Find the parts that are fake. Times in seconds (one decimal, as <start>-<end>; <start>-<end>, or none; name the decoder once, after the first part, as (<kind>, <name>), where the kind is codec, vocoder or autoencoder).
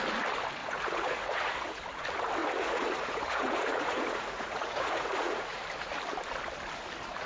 0.6-1.8 (vocoder, Vocos); 2.4-5.6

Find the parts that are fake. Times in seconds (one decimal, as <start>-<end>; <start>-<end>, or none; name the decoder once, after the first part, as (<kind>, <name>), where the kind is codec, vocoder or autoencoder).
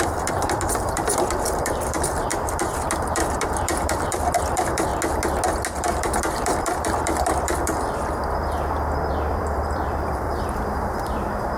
0.0-4.9 (vocoder, BigVGAN v2); 5.7-8.2; 9.3-11.6